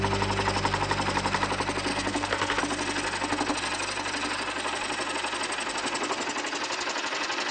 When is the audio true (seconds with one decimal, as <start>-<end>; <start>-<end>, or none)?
0.0-1.9; 2.6-7.5